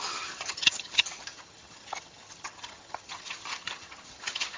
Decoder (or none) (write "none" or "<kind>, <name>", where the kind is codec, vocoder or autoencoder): vocoder, HiFi-GAN